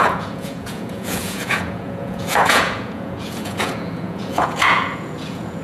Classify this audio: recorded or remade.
remade